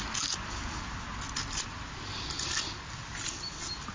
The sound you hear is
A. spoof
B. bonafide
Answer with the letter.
B